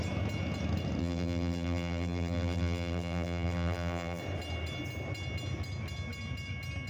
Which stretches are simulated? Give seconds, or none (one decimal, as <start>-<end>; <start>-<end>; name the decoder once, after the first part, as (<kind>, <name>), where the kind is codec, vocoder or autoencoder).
1.0-4.2 (vocoder, BigVGAN v2)